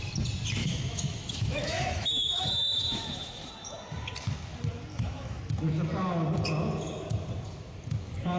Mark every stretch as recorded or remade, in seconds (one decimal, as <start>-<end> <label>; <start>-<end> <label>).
0.0-0.6 recorded; 0.6-3.5 remade; 3.5-4.9 recorded; 4.9-5.4 remade; 5.4-8.4 recorded